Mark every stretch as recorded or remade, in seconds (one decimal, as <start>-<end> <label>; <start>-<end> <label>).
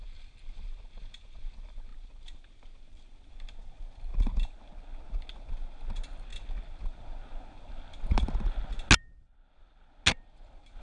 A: 0.0-1.9 recorded; 1.9-3.3 remade; 3.3-10.8 recorded